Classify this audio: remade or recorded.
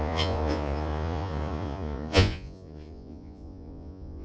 remade